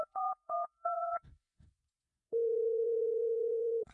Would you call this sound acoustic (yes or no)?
no